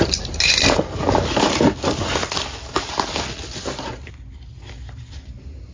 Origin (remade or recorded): recorded